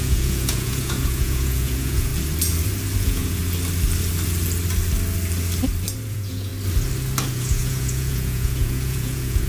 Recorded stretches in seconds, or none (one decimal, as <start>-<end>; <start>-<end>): 2.1-3.0; 3.4-6.1; 6.5-7.3